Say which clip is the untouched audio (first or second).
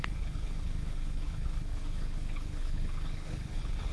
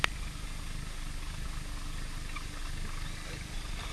second